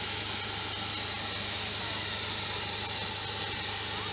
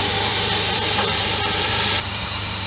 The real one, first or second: first